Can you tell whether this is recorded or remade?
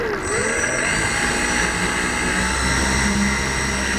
recorded